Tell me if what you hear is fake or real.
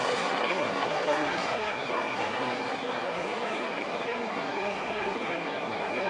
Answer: fake